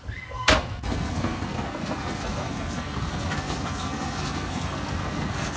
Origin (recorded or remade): remade